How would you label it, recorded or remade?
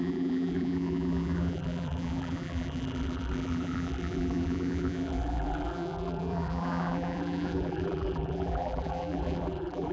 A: remade